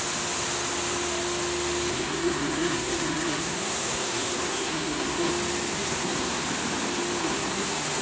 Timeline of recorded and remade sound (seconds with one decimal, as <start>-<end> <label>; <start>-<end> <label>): 0.0-1.9 recorded; 1.9-5.3 remade; 5.3-5.7 recorded; 5.7-6.4 remade; 6.4-7.2 recorded; 7.2-8.0 remade